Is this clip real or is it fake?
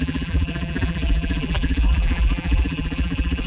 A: fake